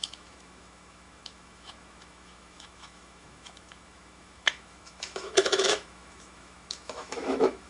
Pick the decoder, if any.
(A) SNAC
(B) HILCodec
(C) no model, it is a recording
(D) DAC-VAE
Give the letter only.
D